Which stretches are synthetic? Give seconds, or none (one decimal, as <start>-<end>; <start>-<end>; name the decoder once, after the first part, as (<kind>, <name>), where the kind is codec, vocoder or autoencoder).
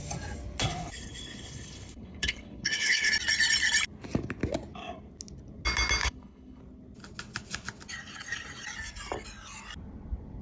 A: 0.6-3.1 (codec, HILCodec); 6.0-6.6